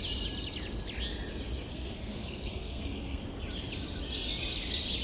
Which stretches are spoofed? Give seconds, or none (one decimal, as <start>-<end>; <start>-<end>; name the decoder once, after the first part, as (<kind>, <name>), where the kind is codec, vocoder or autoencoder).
1.7-3.2 (codec, SNAC)